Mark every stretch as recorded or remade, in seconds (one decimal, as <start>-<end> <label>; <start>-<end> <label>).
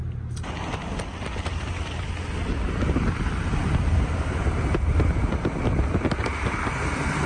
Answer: 0.0-7.3 recorded